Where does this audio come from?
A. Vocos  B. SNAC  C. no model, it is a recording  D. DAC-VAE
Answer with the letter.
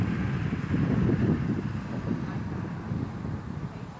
C